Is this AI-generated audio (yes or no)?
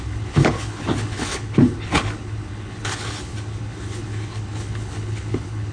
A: yes